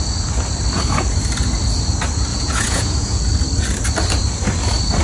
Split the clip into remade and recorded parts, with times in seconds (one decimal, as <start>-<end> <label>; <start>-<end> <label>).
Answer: 0.0-2.3 recorded; 2.3-3.2 remade; 3.2-5.0 recorded